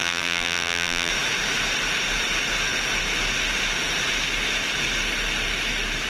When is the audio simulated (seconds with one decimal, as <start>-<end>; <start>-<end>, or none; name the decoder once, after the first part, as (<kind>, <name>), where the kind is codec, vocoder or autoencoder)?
0.0-1.1 (vocoder, BigVGAN v2)